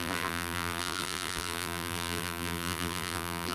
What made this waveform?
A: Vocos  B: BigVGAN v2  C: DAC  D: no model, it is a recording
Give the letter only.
B